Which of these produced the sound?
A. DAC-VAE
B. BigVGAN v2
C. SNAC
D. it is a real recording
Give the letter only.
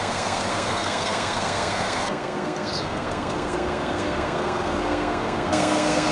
C